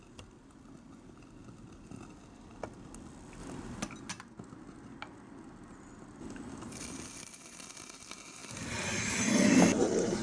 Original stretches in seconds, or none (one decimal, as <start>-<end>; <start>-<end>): 0.0-10.2

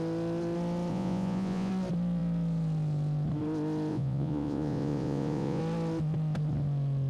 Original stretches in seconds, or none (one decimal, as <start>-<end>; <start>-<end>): 0.0-0.9; 1.7-3.9; 5.6-7.1

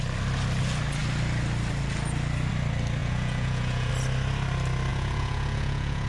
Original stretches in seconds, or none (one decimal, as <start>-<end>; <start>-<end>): 0.0-3.0; 3.9-4.9

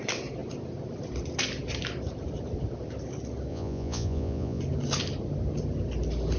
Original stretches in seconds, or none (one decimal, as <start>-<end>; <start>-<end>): 0.0-3.5; 4.6-6.4

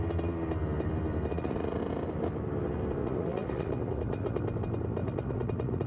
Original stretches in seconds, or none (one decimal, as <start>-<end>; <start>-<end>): 0.0-1.3; 1.8-3.0; 4.4-5.0

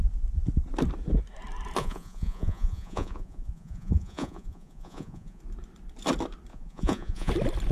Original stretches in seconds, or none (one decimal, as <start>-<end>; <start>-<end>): 0.0-1.8; 5.4-6.5; 7.3-7.7

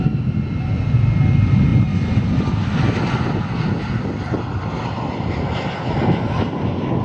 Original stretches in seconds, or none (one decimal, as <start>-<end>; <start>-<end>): 0.0-7.0

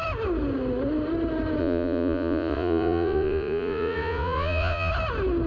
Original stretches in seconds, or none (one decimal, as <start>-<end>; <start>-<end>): 0.0-1.6; 4.9-5.5